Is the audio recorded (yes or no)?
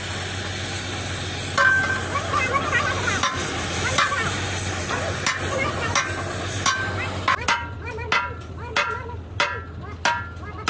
yes